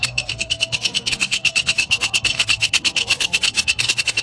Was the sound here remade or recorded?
remade